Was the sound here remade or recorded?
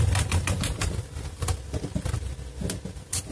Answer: recorded